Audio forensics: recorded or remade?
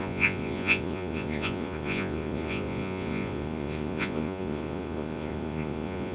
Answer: remade